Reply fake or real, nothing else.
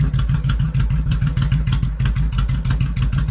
real